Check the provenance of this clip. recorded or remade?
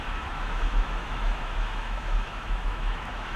remade